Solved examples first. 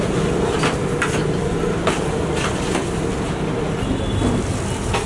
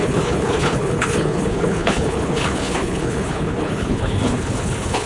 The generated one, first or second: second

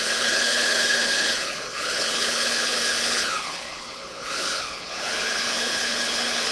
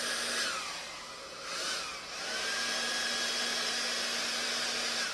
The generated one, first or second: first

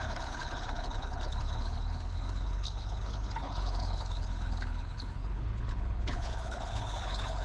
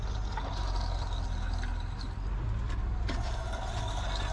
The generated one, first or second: first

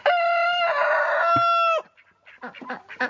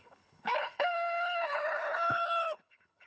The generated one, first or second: second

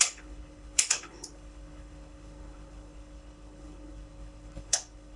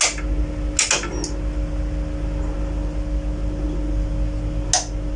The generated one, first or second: first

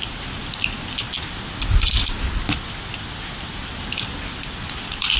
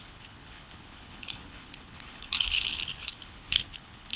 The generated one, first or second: second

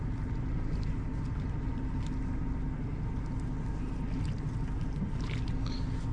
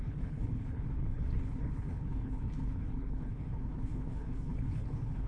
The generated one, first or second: second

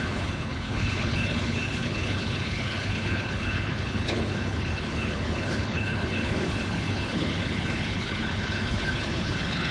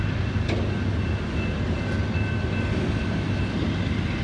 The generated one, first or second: first